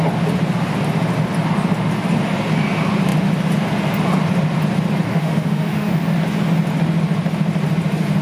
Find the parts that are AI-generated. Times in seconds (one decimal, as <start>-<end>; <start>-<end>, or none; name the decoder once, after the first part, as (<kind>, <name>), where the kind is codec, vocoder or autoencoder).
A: 5.1-5.9 (autoencoder, DAC-VAE)